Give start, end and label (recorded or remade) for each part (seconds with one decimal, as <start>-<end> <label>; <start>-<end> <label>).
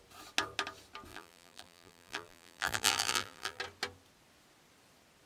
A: 0.0-1.1 recorded; 1.1-3.6 remade; 3.6-5.3 recorded